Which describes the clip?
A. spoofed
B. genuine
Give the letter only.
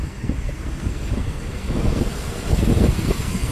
A